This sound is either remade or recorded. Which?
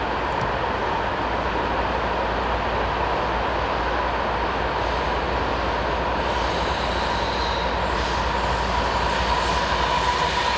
recorded